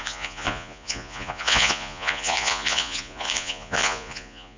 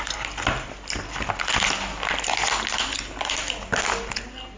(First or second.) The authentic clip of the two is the second